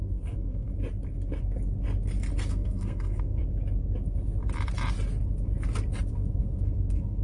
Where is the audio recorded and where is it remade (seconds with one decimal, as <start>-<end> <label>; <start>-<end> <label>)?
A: 0.0-0.7 remade; 0.7-2.5 recorded; 2.5-3.4 remade; 3.4-6.1 recorded; 6.1-7.2 remade